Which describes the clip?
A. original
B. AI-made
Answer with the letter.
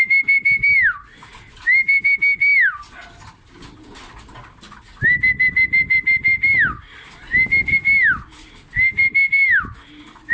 A